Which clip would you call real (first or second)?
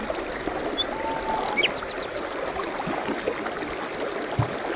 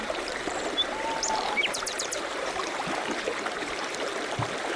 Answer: first